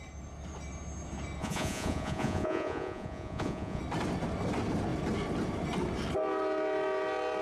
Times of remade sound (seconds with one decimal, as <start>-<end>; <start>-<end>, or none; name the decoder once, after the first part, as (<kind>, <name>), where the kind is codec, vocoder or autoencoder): 1.4-3.8 (vocoder, Vocos)